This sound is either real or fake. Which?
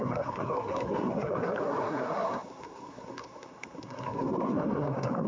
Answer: fake